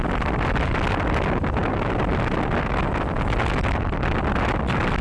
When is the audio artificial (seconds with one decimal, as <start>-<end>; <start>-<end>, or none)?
none